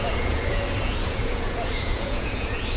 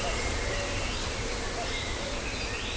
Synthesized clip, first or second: first